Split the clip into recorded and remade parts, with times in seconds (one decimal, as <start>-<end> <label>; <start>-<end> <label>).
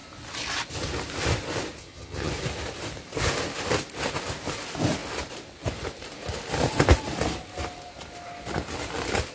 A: 0.0-1.8 recorded; 1.8-2.3 remade; 2.3-9.3 recorded